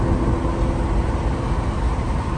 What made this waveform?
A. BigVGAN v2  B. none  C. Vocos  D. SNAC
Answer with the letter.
B